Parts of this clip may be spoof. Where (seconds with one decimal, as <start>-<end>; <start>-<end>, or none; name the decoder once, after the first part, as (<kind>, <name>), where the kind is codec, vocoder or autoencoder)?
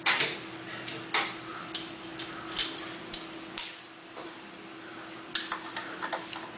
none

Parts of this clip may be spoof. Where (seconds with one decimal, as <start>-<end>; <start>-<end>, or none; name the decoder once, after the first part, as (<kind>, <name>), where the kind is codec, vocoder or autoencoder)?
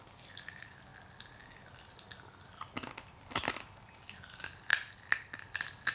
4.7-5.4 (vocoder, BigVGAN v2)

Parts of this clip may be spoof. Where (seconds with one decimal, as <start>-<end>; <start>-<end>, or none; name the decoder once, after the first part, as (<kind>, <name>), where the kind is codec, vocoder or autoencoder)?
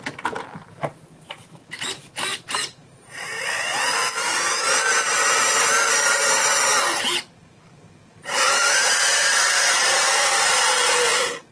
2.3-3.4 (vocoder, BigVGAN v2); 7.4-10.5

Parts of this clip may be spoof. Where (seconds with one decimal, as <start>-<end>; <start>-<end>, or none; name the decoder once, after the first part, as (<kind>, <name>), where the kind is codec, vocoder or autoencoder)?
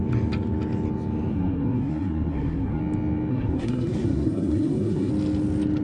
1.3-2.8 (codec, SNAC); 3.3-5.1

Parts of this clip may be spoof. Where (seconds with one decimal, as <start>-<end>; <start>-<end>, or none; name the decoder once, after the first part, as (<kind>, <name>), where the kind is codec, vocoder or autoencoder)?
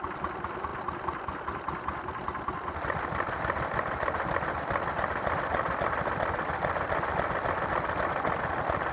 none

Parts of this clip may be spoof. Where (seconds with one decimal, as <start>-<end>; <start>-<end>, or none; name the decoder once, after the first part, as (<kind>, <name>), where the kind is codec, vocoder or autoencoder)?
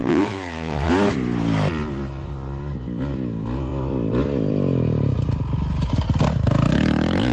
0.0-0.9 (vocoder, WaveNeXt)